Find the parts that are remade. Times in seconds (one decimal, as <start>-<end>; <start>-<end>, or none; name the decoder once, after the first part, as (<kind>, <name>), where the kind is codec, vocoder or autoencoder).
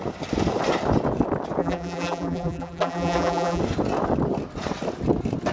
1.6-3.6 (vocoder, BigVGAN v2)